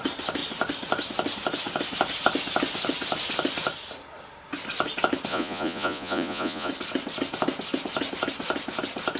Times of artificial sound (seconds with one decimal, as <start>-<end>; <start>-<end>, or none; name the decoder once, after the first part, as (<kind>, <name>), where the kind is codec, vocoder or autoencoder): 5.3-6.7 (vocoder, Vocos)